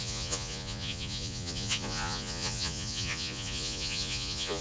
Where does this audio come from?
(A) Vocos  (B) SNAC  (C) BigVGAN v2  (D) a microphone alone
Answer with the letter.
A